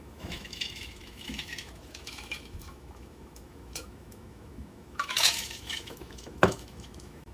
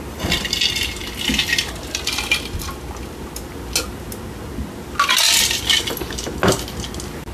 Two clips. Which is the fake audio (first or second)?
first